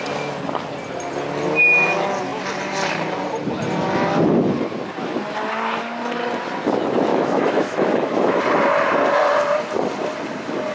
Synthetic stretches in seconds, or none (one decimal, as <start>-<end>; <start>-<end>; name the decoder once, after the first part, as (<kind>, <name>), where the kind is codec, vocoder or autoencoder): 7.1-8.4 (autoencoder, DAC-VAE)